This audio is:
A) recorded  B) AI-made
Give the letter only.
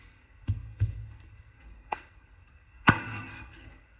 B